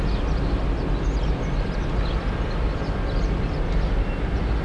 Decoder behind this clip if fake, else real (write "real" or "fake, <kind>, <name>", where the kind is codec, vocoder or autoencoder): real